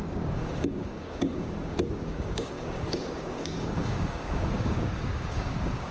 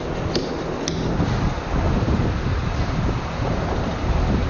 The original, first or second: second